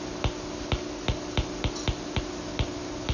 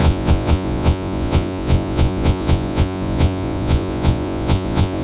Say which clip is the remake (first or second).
second